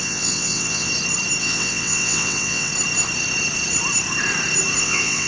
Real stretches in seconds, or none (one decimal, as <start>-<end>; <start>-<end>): 0.9-1.4; 2.7-4.8